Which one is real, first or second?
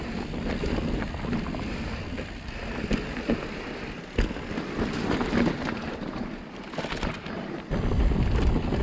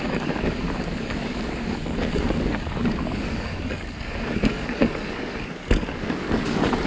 first